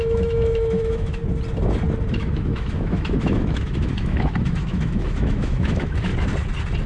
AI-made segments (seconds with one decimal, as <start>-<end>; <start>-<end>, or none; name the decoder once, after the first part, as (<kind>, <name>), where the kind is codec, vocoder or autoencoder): 0.0-1.2 (autoencoder, DAC-VAE); 2.1-6.1